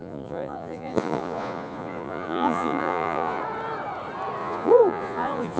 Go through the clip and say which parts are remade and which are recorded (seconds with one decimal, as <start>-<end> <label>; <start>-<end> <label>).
0.0-3.4 remade; 3.4-4.4 recorded; 4.4-5.6 remade